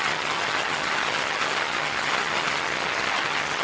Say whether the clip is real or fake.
fake